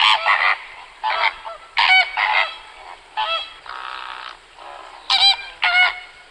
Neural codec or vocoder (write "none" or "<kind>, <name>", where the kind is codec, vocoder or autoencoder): none